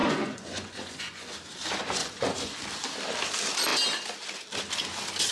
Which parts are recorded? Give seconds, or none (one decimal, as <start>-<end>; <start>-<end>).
1.3-2.0; 2.6-5.3